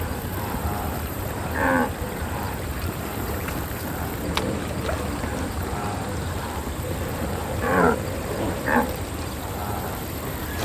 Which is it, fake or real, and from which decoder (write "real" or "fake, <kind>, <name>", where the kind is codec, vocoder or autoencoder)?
fake, vocoder, BigVGAN v2